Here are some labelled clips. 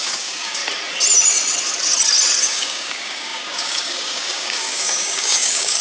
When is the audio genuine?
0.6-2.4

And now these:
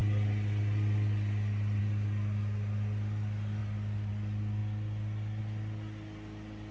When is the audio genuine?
0.0-6.7

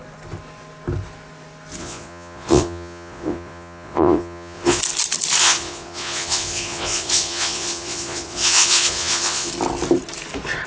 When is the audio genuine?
0.0-1.8; 4.8-5.4; 9.5-10.7

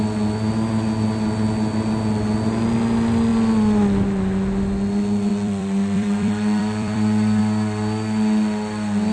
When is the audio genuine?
0.0-5.3; 7.4-9.1

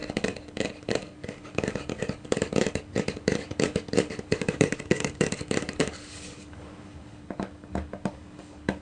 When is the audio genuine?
none